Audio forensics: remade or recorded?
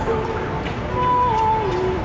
recorded